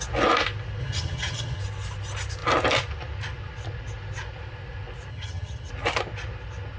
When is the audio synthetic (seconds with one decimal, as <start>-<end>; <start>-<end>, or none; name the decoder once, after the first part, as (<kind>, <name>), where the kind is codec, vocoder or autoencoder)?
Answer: 0.8-1.6 (vocoder, HiFi-GAN); 5.1-5.7